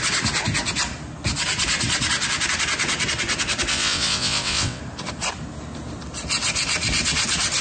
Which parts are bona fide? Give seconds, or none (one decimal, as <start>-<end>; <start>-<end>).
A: 0.0-3.7; 4.8-7.6